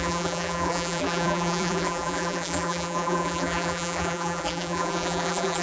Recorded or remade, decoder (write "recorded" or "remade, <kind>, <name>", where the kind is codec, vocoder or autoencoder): remade, vocoder, BigVGAN v2